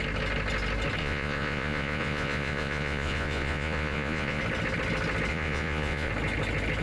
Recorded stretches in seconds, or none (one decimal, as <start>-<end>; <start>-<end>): 0.0-1.0; 4.4-5.3; 6.1-6.8

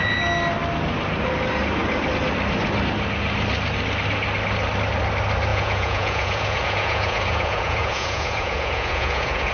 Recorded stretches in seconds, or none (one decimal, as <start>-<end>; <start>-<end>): 0.0-5.5

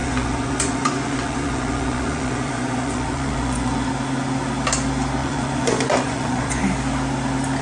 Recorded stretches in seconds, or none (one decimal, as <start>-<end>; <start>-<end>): 3.9-5.2; 6.6-7.6

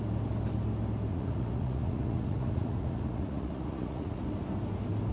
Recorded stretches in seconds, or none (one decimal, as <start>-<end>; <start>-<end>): 0.0-1.1; 4.2-5.1